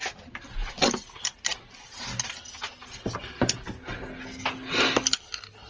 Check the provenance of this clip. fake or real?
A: real